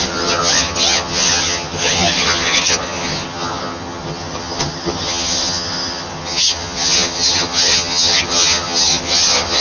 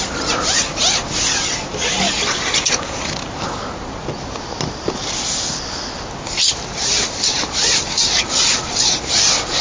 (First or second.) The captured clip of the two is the second